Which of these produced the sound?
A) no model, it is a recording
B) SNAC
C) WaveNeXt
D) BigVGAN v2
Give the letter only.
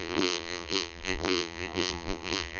D